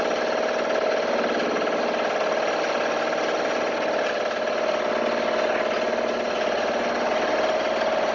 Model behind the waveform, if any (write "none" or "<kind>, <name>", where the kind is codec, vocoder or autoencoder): none